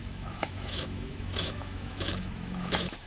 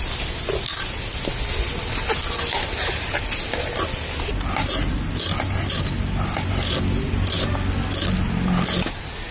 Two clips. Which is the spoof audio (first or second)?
first